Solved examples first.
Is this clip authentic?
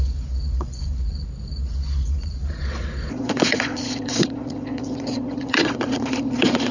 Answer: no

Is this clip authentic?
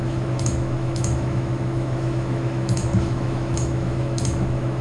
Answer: no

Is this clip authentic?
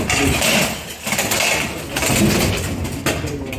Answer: yes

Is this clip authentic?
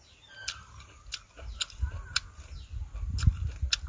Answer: yes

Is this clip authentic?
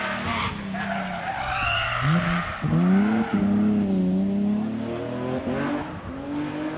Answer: yes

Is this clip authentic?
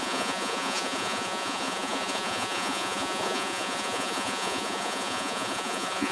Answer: no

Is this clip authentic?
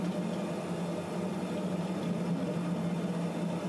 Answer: yes